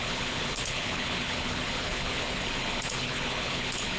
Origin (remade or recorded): remade